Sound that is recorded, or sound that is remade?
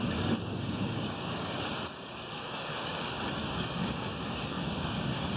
remade